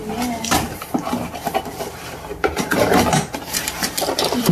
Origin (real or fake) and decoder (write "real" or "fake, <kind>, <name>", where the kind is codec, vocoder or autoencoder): fake, vocoder, BigVGAN v2